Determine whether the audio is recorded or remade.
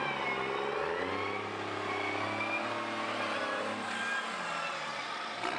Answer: recorded